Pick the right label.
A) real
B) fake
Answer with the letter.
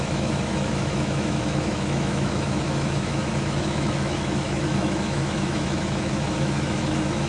B